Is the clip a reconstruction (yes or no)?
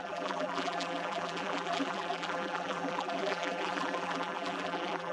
yes